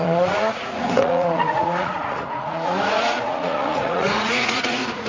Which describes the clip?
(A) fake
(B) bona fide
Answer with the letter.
A